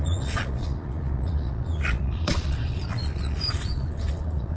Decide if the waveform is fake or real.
fake